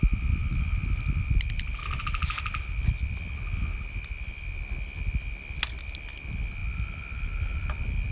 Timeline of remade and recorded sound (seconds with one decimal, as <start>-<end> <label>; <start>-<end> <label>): 0.0-8.1 recorded